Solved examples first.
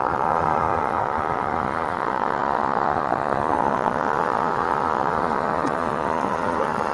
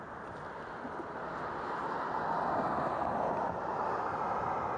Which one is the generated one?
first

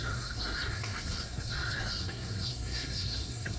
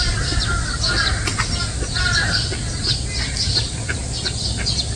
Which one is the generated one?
first